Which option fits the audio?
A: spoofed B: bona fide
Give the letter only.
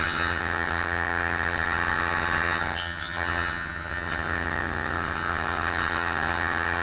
A